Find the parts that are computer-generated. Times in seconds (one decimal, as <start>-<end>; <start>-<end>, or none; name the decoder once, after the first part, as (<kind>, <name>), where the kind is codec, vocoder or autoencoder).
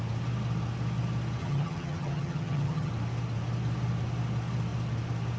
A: 1.4-2.9 (vocoder, HiFi-GAN)